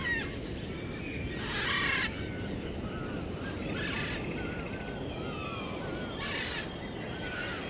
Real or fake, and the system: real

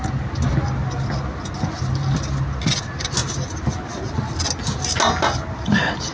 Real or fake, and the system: real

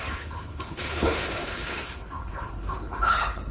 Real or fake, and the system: fake, codec, HILCodec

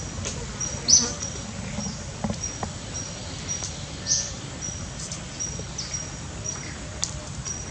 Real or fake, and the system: real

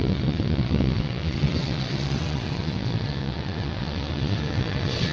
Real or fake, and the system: fake, vocoder, WaveNeXt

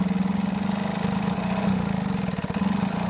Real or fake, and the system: real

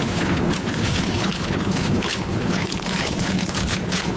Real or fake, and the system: fake, codec, HILCodec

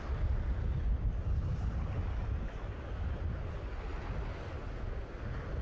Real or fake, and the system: real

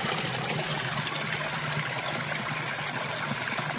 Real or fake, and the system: real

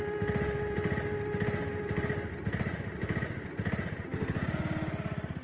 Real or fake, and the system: real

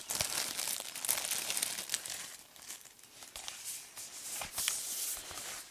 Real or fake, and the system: real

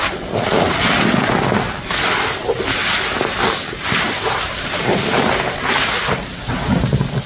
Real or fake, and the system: real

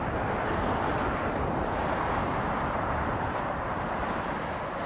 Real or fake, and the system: real